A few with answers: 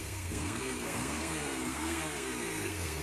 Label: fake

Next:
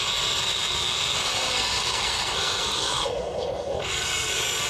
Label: fake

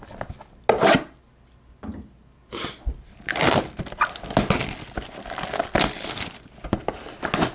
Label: real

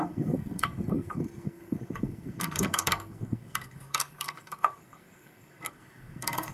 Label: fake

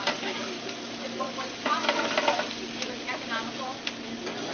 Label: real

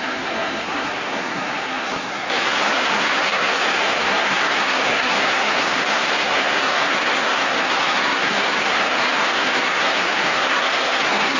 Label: fake